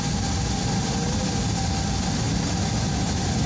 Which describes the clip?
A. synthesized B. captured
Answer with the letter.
B